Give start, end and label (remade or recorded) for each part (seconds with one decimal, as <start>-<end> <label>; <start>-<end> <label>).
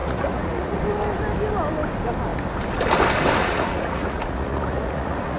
0.0-0.8 remade; 0.8-3.4 recorded; 3.4-5.4 remade